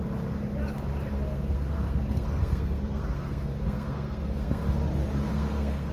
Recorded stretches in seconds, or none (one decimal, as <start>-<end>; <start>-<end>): 0.0-1.1; 4.6-5.3